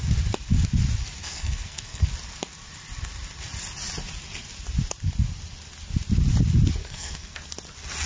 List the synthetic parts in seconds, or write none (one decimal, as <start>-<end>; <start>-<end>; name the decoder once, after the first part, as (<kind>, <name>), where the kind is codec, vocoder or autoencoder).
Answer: 1.2-2.1 (codec, SNAC); 6.8-7.4

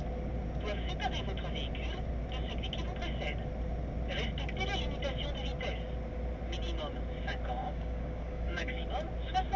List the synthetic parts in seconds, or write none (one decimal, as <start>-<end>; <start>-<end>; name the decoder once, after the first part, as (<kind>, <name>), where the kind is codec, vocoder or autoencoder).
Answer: 7.6-8.8 (codec, DAC)